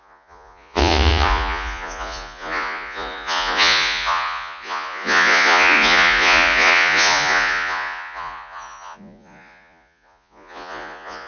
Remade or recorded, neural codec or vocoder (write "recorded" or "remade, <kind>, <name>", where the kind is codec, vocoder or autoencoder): remade, vocoder, Vocos